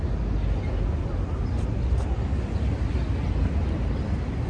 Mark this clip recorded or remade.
recorded